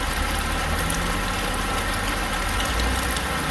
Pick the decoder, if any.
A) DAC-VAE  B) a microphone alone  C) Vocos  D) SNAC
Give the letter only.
B